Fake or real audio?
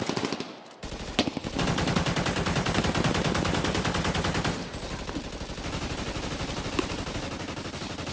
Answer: real